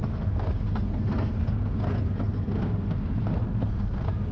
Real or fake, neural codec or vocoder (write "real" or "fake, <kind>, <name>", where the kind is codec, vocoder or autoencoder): fake, codec, SNAC